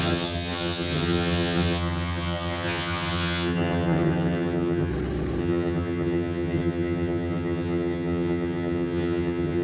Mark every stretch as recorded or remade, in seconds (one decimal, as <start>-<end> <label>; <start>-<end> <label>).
0.0-4.9 remade; 4.9-5.4 recorded; 5.4-9.6 remade